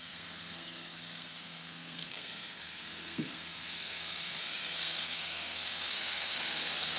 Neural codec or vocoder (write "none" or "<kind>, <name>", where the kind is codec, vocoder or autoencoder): codec, SNAC